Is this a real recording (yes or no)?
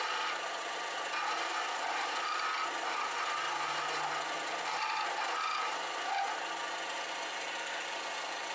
yes